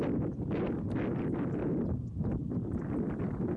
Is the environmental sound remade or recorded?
recorded